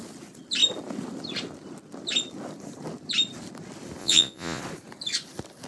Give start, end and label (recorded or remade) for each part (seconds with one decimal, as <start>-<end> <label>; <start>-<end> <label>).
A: 0.0-4.0 recorded; 4.0-4.6 remade; 4.6-5.7 recorded